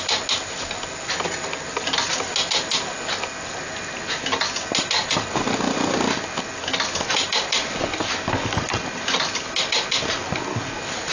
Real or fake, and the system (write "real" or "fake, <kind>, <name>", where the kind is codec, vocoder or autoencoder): real